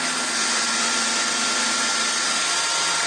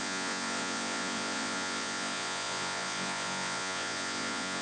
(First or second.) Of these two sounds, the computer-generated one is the second